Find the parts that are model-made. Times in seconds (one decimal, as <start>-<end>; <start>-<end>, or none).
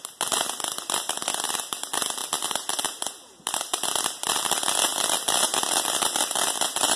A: none